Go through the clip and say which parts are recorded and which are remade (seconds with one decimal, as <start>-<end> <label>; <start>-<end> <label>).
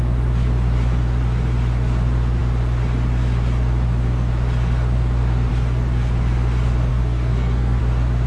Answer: 0.0-6.9 recorded; 6.9-7.8 remade; 7.8-8.3 recorded